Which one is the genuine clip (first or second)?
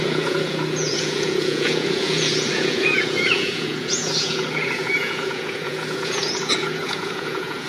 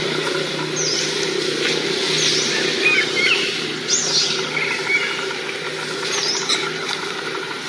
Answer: second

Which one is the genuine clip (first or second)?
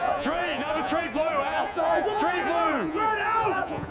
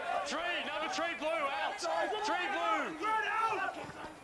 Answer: second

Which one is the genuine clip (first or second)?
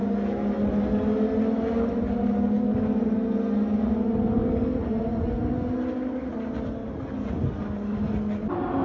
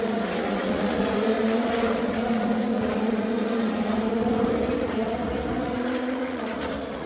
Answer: first